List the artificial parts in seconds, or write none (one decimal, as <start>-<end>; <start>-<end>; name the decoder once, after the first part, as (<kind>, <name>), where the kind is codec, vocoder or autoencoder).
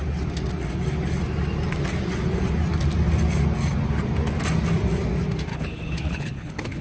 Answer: 5.5-6.8 (codec, HILCodec)